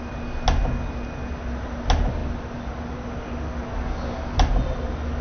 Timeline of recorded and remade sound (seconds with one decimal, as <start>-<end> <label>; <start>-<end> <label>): 0.0-5.2 recorded